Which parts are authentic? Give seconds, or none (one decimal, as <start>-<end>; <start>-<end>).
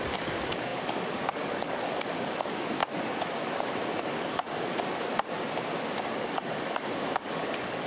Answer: 2.8-4.0; 4.7-6.0